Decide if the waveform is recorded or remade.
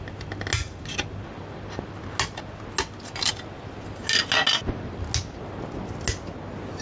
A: recorded